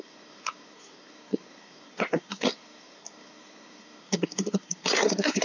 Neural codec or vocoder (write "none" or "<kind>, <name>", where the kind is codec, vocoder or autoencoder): codec, SNAC